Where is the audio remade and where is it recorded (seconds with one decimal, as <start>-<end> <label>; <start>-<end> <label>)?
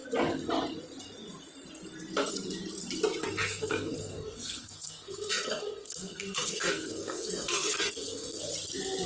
0.0-3.2 recorded; 3.2-8.4 remade; 8.4-9.1 recorded